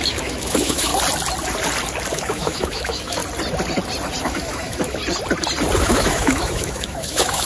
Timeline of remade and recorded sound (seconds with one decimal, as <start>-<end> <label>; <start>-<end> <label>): 0.0-0.9 remade; 0.9-2.1 recorded; 2.1-3.2 remade; 3.2-4.2 recorded; 4.2-5.0 remade; 5.0-5.8 recorded; 5.8-7.5 remade